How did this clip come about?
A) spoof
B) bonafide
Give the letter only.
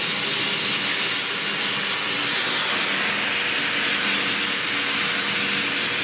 B